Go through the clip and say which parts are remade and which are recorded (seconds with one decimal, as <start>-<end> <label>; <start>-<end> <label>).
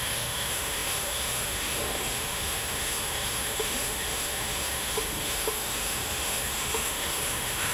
0.0-7.7 remade